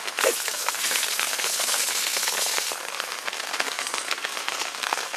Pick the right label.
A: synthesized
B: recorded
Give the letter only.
A